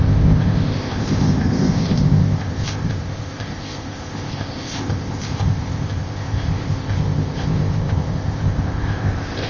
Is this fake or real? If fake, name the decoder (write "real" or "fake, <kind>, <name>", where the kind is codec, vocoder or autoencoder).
fake, codec, ZipCodec